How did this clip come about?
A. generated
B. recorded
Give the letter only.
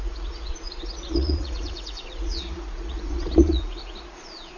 A